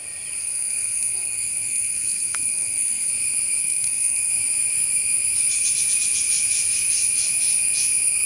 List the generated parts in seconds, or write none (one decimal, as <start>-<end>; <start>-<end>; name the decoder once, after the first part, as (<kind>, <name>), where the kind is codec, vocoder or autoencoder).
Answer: 0.4-3.1 (codec, SNAC); 3.6-4.3